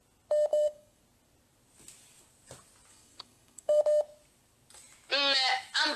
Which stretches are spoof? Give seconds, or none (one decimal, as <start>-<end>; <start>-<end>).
0.5-1.0; 2.9-3.8